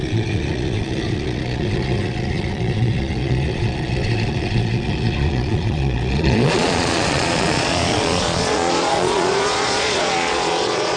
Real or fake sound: fake